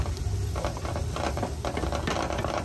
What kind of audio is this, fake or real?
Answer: real